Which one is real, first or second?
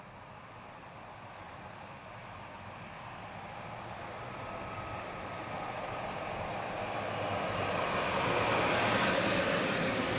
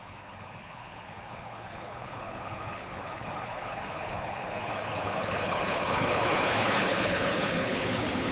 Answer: first